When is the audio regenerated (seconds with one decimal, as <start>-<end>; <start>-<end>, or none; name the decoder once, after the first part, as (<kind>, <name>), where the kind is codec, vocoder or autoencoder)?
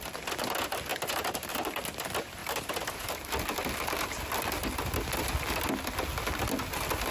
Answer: 0.9-1.8 (vocoder, BigVGAN v2); 2.4-3.3